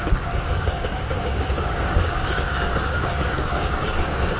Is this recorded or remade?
remade